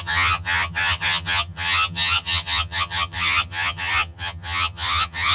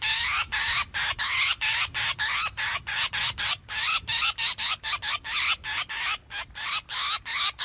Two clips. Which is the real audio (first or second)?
second